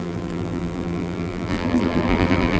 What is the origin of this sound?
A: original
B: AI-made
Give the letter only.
B